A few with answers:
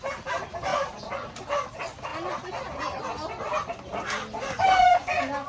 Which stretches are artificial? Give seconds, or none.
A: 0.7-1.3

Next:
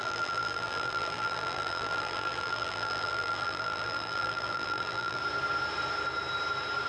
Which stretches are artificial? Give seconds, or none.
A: 0.0-5.2

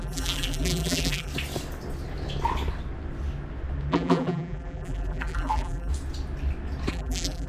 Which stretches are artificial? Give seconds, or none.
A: 0.0-1.3; 3.9-5.9; 6.9-7.5

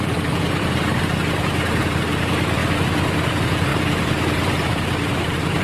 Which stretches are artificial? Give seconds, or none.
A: 0.0-0.9; 1.4-2.6; 3.3-5.6

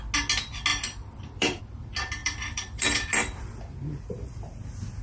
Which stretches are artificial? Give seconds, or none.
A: 0.7-1.6; 2.2-3.6

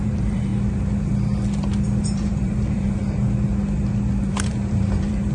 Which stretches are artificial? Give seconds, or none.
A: 0.0-0.5; 2.0-3.0; 4.2-5.3

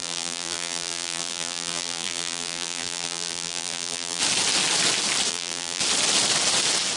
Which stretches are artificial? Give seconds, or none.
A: 0.0-4.2; 5.3-5.8